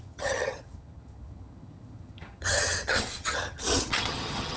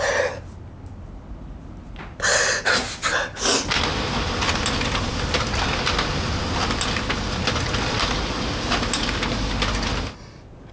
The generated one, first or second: first